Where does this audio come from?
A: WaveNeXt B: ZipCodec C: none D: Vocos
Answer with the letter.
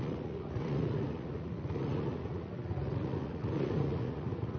D